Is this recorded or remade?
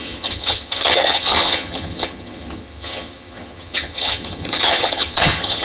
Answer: remade